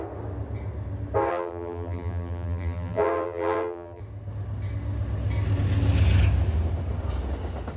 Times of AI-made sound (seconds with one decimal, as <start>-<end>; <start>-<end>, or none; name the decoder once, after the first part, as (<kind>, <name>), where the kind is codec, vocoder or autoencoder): 1.3-4.0 (vocoder, BigVGAN v2)